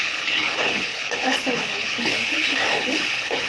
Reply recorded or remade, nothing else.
remade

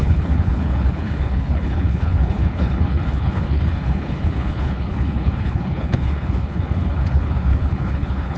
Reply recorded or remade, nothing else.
remade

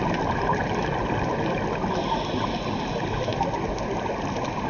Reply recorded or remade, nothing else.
recorded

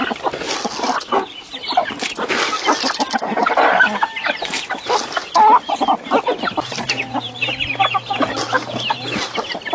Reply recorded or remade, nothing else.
recorded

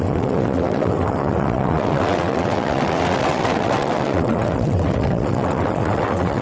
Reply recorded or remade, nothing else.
remade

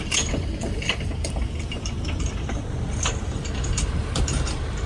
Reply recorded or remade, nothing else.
remade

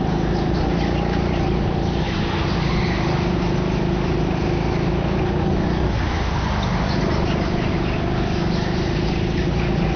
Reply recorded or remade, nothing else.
recorded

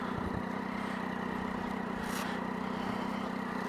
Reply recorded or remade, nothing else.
recorded